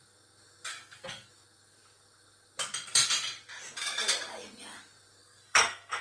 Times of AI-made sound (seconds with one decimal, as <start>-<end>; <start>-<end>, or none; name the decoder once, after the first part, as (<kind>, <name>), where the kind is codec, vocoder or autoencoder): 0.7-1.3 (codec, SNAC); 5.2-6.0